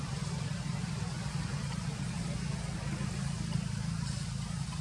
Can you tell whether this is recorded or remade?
recorded